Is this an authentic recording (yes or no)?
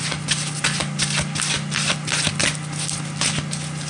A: yes